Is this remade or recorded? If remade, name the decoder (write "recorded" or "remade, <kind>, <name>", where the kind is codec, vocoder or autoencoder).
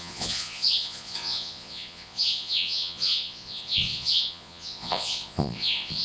remade, vocoder, Vocos